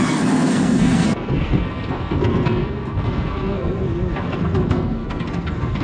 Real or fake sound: fake